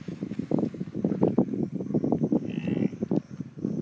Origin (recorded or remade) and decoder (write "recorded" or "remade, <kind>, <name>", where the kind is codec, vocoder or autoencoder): recorded